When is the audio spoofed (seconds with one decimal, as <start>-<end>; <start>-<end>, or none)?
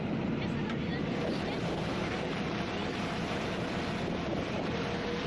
0.9-3.8